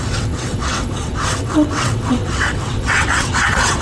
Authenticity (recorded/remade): remade